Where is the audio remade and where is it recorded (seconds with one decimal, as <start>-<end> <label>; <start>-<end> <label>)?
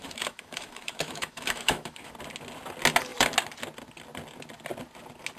0.0-2.1 remade; 2.1-5.4 recorded